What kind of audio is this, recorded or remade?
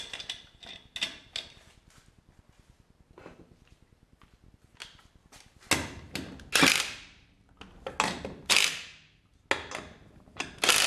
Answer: recorded